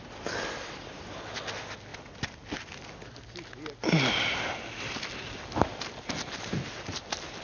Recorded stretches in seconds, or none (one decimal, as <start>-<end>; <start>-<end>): 0.0-7.4

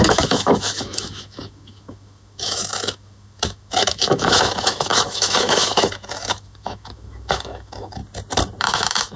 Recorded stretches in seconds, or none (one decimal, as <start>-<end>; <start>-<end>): 8.0-8.6

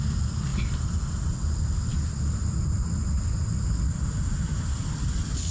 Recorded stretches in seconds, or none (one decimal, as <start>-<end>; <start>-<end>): 0.0-5.5

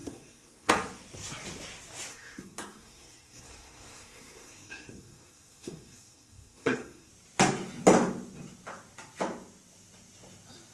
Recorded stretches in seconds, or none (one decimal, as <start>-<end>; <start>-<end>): 0.7-2.1; 7.1-10.7